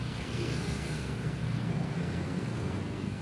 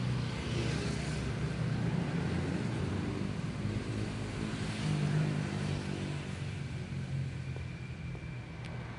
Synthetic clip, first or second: first